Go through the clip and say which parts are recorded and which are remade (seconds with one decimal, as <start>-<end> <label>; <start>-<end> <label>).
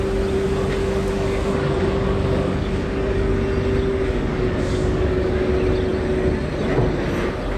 0.0-0.8 recorded; 0.8-3.3 remade; 3.3-3.9 recorded; 3.9-5.5 remade; 5.5-7.6 recorded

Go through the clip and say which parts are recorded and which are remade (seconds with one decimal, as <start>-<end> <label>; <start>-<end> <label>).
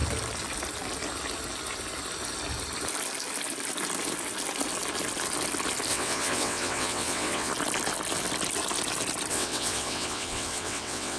0.0-5.9 recorded; 5.9-7.5 remade; 7.5-9.3 recorded; 9.3-11.2 remade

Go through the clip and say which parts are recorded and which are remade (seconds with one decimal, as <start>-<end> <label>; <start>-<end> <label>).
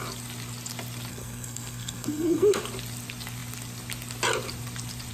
0.0-1.1 recorded; 1.1-2.6 remade; 2.6-5.1 recorded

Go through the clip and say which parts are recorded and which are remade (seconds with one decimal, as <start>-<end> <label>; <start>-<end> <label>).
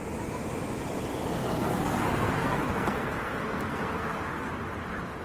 0.0-1.4 recorded; 1.4-4.5 remade; 4.5-5.2 recorded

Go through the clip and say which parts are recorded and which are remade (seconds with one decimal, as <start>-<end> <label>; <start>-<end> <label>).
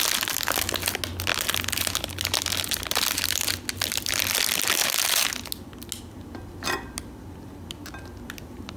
0.0-8.8 recorded